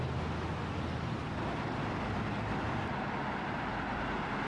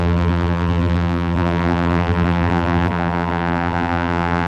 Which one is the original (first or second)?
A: first